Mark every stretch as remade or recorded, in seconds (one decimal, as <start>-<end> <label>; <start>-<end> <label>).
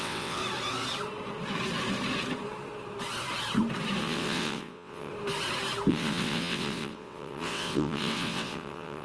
0.0-0.4 remade; 0.4-4.0 recorded; 4.0-5.1 remade; 5.1-5.9 recorded; 5.9-9.0 remade